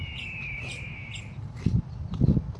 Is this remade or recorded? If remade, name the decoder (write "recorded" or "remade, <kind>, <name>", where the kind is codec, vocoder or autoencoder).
recorded